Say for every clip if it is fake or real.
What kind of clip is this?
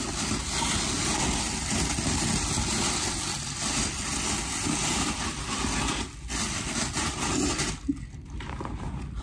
real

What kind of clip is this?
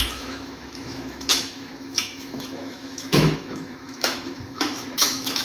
fake